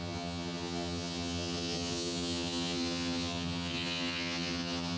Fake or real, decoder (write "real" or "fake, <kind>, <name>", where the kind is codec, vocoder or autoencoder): fake, vocoder, HiFi-GAN